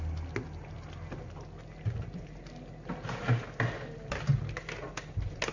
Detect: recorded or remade recorded